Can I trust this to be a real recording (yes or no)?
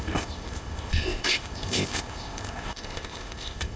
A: no